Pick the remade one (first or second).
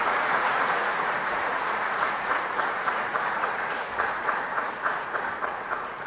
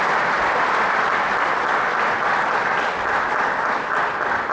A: first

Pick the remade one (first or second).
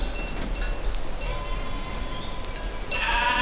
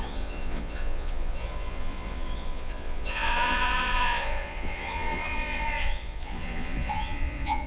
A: second